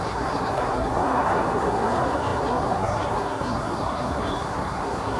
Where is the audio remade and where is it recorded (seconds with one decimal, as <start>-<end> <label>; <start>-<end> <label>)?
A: 0.0-5.2 remade